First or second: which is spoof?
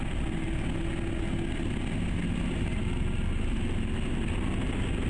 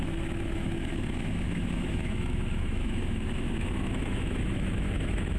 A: second